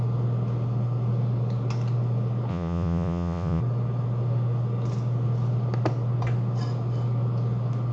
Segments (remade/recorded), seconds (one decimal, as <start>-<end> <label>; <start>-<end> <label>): 0.0-2.5 recorded; 2.5-3.6 remade; 3.6-7.9 recorded